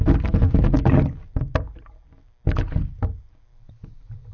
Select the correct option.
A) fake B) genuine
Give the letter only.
B